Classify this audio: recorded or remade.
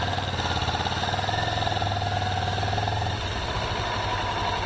recorded